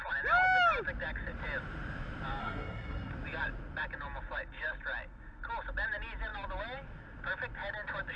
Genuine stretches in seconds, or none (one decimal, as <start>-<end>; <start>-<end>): 0.0-2.4; 3.1-8.2